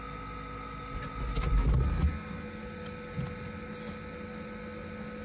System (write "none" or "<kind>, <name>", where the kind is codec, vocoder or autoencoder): none